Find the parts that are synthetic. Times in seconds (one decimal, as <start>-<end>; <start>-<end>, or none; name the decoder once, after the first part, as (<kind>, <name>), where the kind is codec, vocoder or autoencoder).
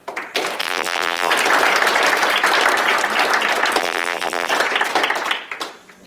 0.6-1.3 (vocoder, BigVGAN v2); 3.8-4.5